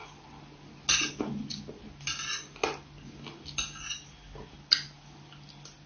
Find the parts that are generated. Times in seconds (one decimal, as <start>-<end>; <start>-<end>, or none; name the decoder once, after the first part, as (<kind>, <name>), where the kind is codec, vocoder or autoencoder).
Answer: none